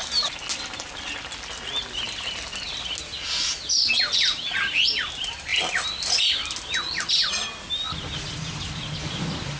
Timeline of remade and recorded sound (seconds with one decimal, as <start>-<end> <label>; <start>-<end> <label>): 0.0-9.6 recorded